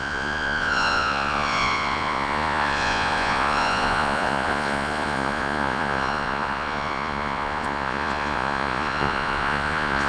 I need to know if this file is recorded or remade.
remade